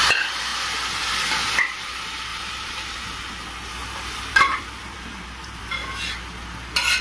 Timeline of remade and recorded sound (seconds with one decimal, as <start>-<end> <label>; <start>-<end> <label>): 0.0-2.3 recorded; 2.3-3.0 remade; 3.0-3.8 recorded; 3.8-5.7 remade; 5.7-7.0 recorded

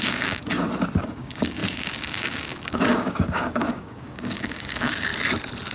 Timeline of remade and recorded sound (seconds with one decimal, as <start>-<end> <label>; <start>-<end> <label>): 0.0-0.4 remade; 0.4-1.1 recorded; 1.1-5.1 remade; 5.1-5.7 recorded

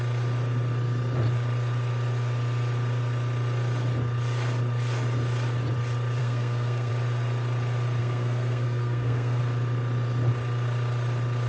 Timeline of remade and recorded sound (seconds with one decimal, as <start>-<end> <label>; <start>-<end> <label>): 0.0-6.2 recorded; 6.2-6.9 remade; 6.9-8.0 recorded; 8.0-9.4 remade; 9.4-11.5 recorded

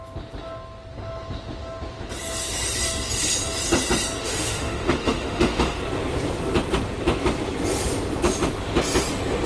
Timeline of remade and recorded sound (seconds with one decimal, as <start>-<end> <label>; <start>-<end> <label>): 0.0-4.2 recorded; 4.2-5.8 remade; 5.8-9.5 recorded

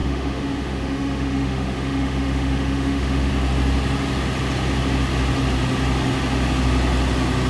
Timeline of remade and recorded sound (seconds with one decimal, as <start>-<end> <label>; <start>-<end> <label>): 0.0-3.3 remade; 3.3-7.5 recorded

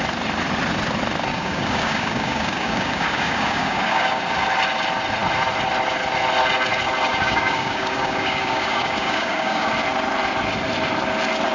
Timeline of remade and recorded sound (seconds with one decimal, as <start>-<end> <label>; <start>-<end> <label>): 0.0-1.3 recorded; 1.3-4.2 remade; 4.2-7.1 recorded; 7.1-9.7 remade; 9.7-11.5 recorded

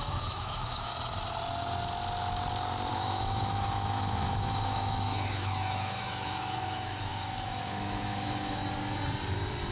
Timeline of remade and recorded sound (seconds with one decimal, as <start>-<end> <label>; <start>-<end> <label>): 0.0-0.9 remade; 0.9-2.9 recorded; 2.9-8.6 remade; 8.6-9.7 recorded

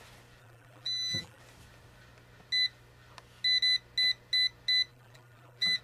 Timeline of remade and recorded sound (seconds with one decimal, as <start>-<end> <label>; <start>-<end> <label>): 0.0-0.4 recorded; 0.4-1.4 remade; 1.4-4.9 recorded; 4.9-5.8 remade